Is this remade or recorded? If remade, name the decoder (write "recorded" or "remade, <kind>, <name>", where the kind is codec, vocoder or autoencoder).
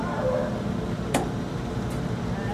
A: remade, vocoder, BigVGAN v2